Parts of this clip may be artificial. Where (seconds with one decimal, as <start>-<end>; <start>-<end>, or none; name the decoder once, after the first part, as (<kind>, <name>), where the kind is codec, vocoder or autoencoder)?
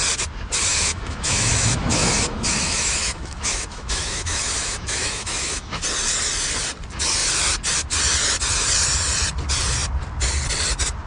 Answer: 0.7-5.8 (autoencoder, DAC-VAE)